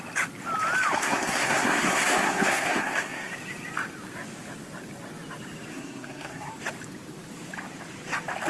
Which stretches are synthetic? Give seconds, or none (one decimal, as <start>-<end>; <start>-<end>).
1.0-3.3; 5.7-6.5